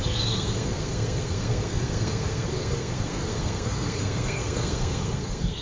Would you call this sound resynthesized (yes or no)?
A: yes